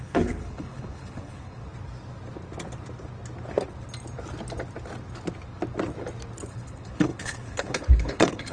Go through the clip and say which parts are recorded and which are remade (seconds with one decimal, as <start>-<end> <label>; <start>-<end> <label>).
0.0-1.6 remade; 1.6-6.5 recorded; 6.5-8.5 remade